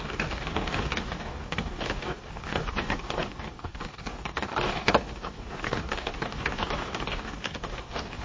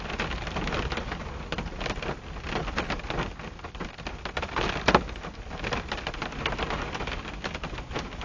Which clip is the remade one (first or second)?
first